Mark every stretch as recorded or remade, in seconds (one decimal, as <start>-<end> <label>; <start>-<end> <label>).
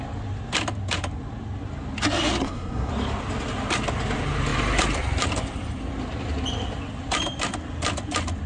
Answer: 0.0-2.4 recorded; 2.4-2.9 remade; 2.9-8.5 recorded